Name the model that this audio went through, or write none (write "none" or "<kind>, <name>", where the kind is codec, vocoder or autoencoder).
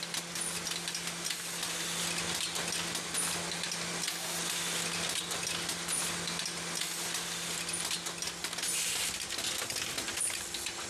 none